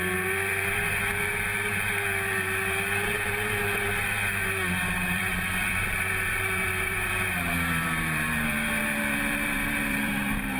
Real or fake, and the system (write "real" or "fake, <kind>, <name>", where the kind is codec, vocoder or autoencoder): fake, vocoder, BigVGAN v2